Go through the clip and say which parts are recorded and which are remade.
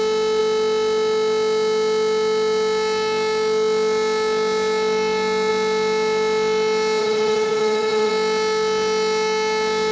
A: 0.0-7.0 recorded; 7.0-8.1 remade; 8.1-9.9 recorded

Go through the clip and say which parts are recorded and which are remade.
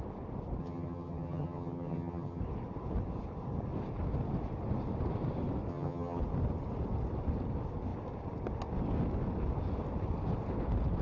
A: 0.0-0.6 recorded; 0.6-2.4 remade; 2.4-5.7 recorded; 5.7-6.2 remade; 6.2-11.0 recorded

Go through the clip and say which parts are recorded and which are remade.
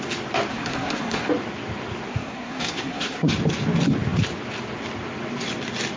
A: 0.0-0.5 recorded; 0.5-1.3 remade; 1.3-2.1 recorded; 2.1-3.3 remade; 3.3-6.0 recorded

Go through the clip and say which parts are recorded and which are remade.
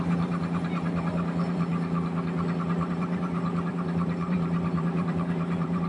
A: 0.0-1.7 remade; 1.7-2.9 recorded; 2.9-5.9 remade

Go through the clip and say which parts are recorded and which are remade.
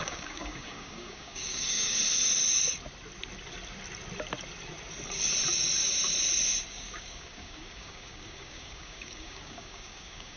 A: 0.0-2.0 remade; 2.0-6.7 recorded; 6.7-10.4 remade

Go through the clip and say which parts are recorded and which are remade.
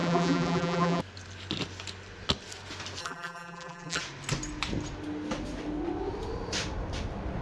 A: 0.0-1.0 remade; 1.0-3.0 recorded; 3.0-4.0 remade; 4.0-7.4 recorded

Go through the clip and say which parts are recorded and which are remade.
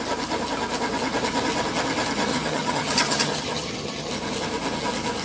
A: 0.0-2.3 recorded; 2.3-4.1 remade; 4.1-5.2 recorded